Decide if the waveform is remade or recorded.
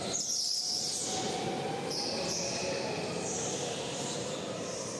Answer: remade